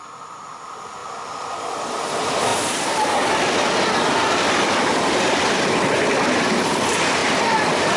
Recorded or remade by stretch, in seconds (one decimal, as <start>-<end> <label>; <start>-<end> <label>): 0.0-7.2 recorded; 7.2-8.0 remade